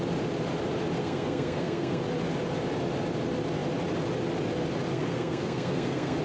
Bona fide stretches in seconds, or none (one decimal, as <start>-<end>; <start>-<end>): 0.0-1.0; 2.0-4.9